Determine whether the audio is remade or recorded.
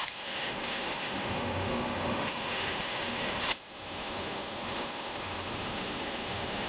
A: remade